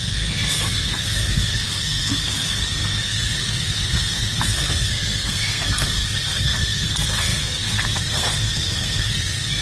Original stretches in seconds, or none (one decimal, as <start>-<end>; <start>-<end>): none